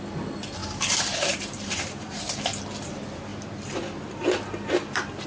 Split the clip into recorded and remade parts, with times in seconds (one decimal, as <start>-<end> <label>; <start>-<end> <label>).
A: 0.0-0.6 recorded; 0.6-2.6 remade; 2.6-5.3 recorded